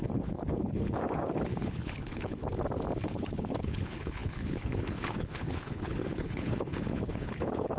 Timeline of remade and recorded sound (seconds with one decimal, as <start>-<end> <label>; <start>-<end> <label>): 0.0-2.4 remade; 2.4-3.1 recorded; 3.1-7.8 remade